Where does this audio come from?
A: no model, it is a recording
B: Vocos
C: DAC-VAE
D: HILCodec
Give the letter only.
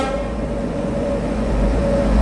B